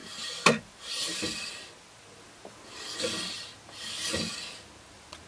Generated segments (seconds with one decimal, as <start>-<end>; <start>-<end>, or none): 0.0-0.6